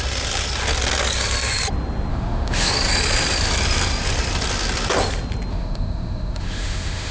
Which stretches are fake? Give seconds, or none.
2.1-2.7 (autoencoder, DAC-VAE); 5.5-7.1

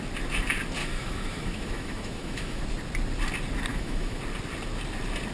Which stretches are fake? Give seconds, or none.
0.8-2.6 (autoencoder, DAC-VAE); 3.7-4.2